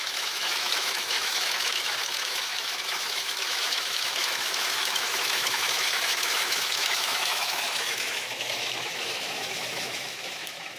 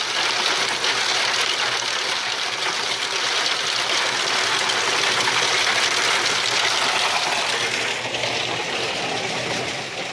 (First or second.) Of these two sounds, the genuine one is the second